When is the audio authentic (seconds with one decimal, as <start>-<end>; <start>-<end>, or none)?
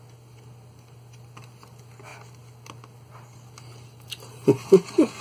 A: 0.0-5.2